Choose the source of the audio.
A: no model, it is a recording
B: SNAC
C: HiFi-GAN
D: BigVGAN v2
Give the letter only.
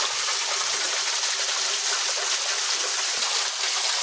A